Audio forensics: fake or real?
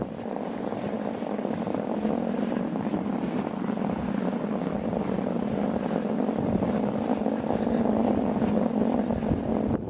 real